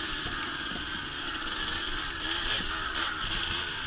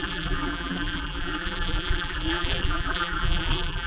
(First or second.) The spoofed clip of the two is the second